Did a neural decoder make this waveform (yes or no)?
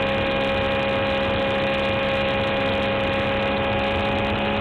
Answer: no